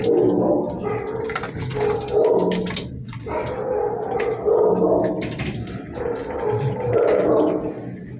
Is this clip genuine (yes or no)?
yes